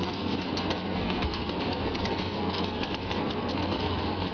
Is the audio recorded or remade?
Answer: remade